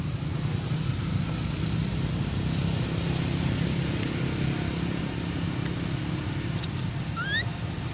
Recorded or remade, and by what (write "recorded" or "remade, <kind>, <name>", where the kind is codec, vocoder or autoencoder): recorded